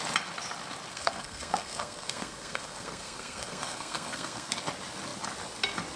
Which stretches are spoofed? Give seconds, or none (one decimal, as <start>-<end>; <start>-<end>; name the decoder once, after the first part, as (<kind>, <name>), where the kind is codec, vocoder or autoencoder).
0.9-4.5 (codec, SNAC)